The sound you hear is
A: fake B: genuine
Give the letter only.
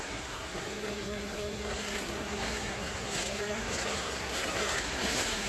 A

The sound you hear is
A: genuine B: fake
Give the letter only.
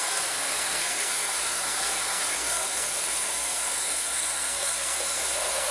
B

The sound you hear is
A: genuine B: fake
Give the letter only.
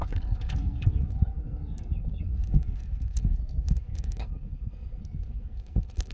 B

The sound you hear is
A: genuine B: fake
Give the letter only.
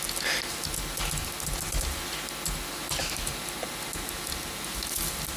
A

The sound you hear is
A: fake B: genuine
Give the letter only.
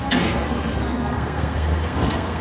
A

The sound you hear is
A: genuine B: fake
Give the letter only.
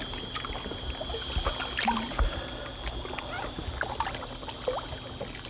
A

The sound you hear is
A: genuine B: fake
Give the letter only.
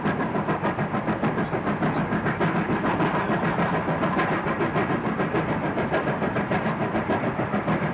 A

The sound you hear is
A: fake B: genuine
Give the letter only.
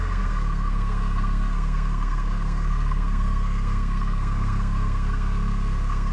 A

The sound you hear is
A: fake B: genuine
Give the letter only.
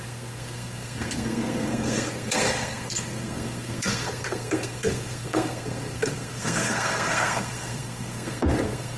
A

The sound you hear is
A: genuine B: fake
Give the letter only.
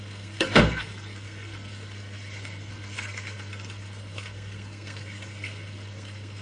B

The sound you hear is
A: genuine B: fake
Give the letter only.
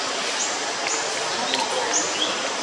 A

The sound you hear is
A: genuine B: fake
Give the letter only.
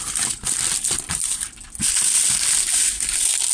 A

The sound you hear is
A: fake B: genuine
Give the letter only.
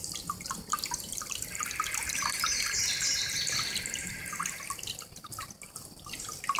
B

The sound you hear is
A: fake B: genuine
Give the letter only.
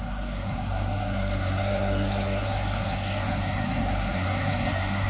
A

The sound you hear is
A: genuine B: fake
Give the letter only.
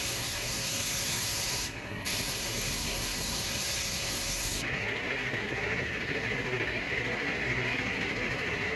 B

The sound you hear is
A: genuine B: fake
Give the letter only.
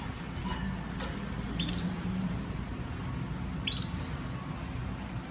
A